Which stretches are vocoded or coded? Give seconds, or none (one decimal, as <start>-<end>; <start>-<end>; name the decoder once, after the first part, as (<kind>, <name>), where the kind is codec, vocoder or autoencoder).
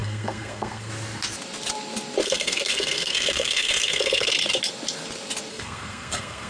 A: 0.0-0.9 (codec, SNAC); 2.2-4.3; 5.5-6.5